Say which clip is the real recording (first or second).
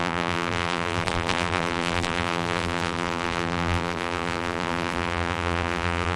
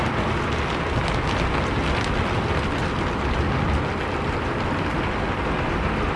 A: second